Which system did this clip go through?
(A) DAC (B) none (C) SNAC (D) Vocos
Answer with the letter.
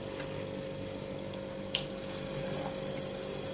B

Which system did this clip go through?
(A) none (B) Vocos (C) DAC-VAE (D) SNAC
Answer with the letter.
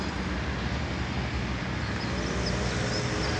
A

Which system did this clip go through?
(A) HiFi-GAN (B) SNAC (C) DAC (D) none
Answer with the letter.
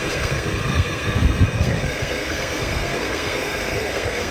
B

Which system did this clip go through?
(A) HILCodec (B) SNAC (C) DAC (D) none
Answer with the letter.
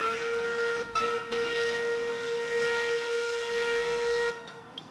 B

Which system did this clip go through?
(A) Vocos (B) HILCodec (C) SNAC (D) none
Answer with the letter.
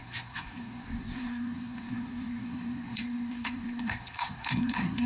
C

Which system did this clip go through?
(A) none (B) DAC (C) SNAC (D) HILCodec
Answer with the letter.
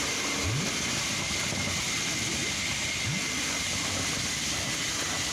A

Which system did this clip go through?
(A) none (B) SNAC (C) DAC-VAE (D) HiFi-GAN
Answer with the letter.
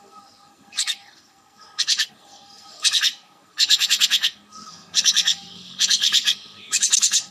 B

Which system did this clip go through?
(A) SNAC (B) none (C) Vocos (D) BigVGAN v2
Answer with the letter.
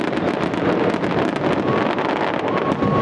B